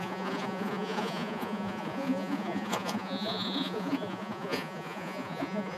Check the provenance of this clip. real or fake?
fake